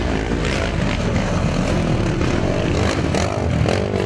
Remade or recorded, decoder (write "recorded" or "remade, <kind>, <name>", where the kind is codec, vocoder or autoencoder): recorded